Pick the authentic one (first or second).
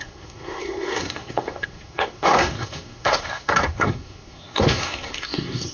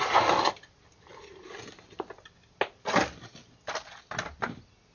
second